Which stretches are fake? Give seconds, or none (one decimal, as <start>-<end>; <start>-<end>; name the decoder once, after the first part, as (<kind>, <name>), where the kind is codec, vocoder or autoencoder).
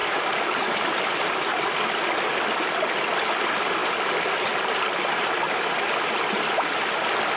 none